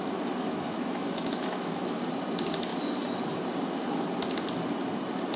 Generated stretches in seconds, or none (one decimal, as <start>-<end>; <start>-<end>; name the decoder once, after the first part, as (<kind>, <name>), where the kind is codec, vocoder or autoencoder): 0.5-1.7 (autoencoder, DAC-VAE)